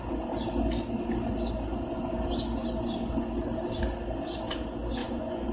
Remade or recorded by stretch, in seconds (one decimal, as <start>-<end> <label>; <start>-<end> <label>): 0.0-5.0 recorded; 5.0-5.5 remade